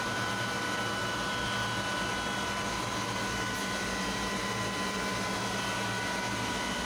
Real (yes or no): yes